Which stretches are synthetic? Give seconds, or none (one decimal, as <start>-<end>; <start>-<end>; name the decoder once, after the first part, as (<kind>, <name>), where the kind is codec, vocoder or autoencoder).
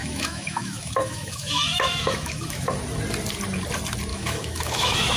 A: 0.0-2.7 (autoencoder, DAC-VAE); 4.1-5.2